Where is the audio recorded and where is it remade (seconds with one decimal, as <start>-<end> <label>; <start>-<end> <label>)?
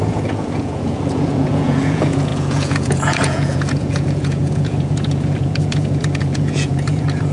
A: 0.0-7.3 remade